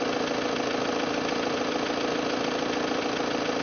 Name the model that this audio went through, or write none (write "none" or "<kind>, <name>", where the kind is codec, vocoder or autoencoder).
none